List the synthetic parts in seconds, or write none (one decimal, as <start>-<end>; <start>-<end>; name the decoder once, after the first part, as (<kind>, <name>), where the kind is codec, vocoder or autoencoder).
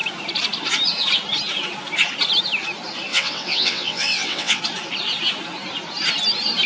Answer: 3.1-4.6 (vocoder, WaveNeXt)